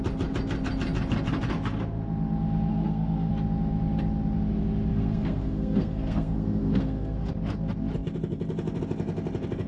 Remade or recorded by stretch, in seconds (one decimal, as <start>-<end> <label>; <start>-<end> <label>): 0.0-2.7 recorded; 2.7-3.3 remade; 3.3-4.9 recorded; 4.9-7.3 remade; 7.3-9.7 recorded